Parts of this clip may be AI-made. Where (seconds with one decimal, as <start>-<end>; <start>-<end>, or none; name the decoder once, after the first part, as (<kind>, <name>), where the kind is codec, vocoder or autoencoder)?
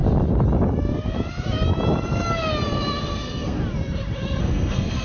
3.0-3.6 (codec, SNAC); 4.4-5.0